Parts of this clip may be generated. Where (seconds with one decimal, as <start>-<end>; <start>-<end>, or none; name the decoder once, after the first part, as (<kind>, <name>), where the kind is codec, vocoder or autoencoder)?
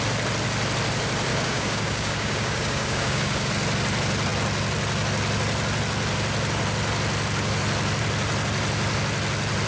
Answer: 1.3-3.5 (codec, DAC)